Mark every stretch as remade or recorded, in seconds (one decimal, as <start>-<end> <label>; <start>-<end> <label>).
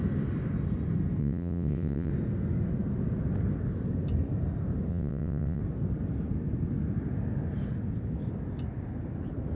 0.0-1.2 recorded; 1.2-2.1 remade; 2.1-4.9 recorded; 4.9-5.6 remade; 5.6-9.5 recorded